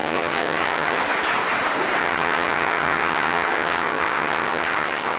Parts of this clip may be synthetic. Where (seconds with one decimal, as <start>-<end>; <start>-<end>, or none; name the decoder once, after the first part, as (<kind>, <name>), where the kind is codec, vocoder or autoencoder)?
0.0-1.0 (vocoder, HiFi-GAN); 2.0-5.2